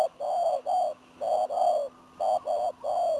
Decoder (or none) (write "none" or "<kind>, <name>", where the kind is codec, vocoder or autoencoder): none